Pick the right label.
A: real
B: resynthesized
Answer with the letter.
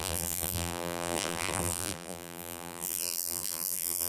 B